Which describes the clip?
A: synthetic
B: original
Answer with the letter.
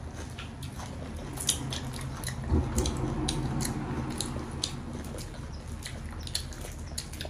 B